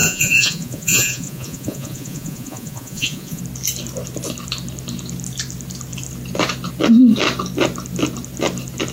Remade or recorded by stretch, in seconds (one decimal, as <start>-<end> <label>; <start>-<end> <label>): 0.0-3.4 remade; 3.4-8.9 recorded